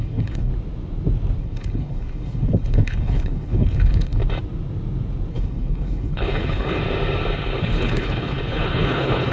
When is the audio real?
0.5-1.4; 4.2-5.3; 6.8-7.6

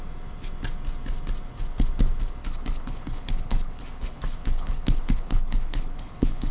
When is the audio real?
0.0-2.4

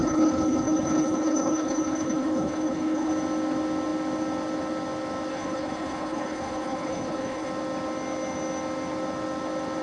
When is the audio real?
3.1-5.3; 7.5-9.8

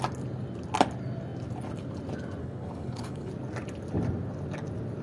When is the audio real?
0.0-2.4; 3.3-5.0

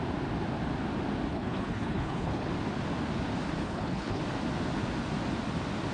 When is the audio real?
0.0-1.3; 2.5-3.6; 4.2-5.9

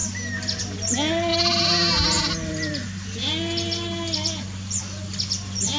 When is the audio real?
0.0-5.8

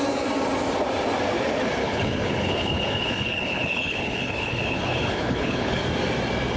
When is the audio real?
0.0-1.8; 5.8-6.6

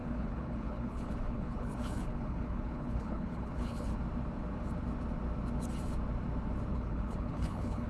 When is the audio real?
4.0-6.7